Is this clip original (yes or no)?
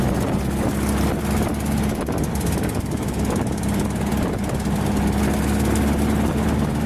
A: yes